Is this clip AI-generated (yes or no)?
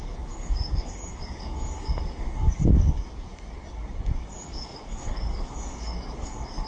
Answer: yes